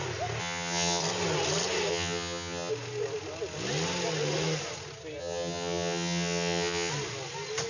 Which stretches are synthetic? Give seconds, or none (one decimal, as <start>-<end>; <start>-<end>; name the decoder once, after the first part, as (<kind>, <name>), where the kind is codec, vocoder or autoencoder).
0.4-1.0 (vocoder, HiFi-GAN); 1.9-2.7; 5.2-6.9